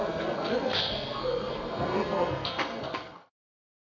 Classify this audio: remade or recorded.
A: remade